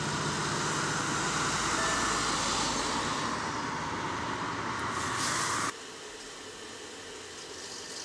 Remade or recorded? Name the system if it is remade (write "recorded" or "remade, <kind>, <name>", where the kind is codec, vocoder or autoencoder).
recorded